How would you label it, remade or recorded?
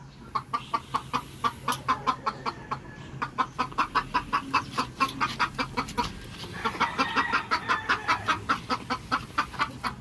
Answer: recorded